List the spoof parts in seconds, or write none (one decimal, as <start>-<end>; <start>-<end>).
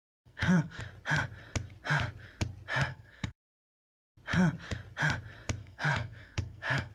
0.0-0.8; 2.9-3.6; 5.6-6.9